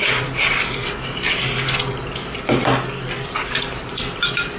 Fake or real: real